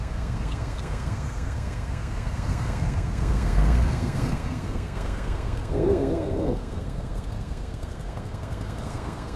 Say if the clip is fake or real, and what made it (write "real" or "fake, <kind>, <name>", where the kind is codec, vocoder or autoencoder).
fake, codec, SNAC